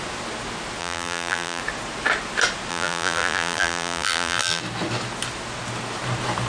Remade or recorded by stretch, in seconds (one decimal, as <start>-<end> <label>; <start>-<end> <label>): 0.0-0.8 recorded; 0.8-1.6 remade; 1.6-2.7 recorded; 2.7-4.6 remade; 4.6-6.5 recorded